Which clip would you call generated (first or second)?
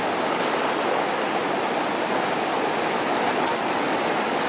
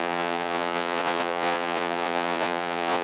second